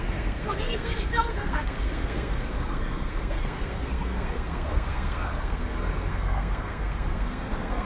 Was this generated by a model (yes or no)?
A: yes